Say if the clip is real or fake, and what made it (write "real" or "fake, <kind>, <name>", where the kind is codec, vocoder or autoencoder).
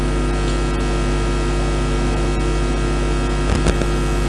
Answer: real